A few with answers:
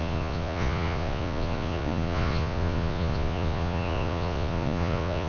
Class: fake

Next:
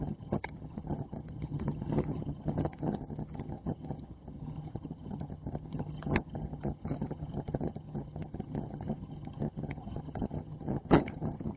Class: fake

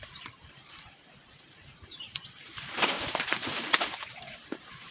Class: fake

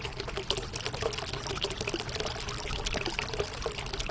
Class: real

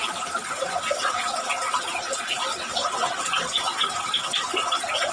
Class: real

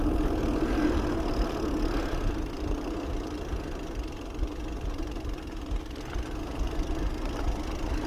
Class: real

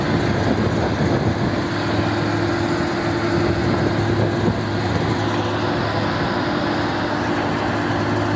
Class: real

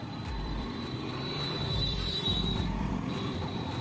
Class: fake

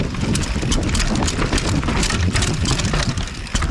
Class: real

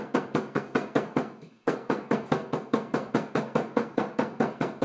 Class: fake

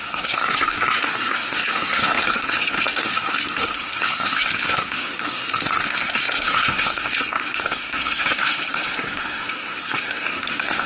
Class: fake